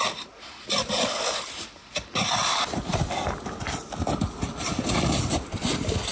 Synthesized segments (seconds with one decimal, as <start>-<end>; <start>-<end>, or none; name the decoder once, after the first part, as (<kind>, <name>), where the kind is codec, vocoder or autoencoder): none